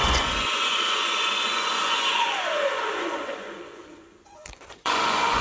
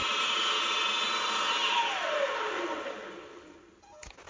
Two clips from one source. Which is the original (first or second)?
second